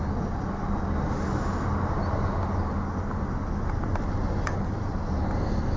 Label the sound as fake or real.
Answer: real